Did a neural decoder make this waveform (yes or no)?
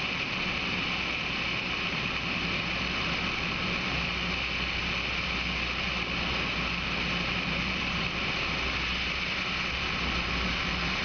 no